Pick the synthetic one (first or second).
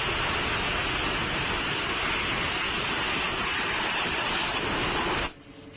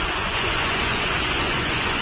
second